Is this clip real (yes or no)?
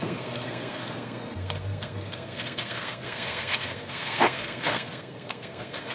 no